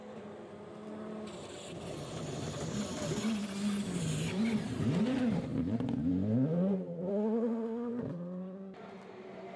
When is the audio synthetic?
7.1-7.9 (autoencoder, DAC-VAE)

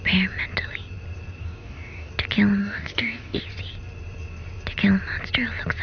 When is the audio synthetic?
1.4-2.1 (codec, DAC); 2.6-3.4

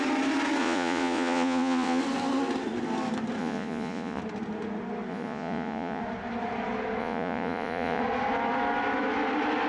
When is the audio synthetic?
0.6-2.0 (vocoder, Vocos); 3.4-4.2; 5.1-6.0; 7.0-8.0

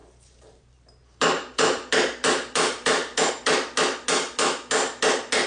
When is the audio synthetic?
0.0-3.3 (vocoder, BigVGAN v2)